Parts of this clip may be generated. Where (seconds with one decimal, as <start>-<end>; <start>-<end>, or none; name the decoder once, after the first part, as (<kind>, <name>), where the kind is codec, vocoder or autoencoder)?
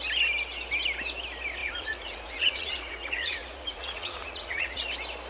1.6-4.8 (vocoder, Vocos)